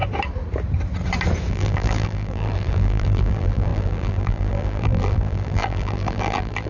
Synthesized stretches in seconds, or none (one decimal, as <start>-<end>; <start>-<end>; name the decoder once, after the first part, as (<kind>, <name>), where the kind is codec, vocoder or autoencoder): 1.5-6.7 (vocoder, BigVGAN v2)